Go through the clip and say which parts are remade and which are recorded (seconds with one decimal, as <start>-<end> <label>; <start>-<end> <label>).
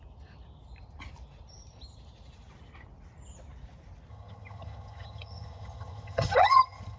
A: 0.0-4.1 recorded; 4.1-7.0 remade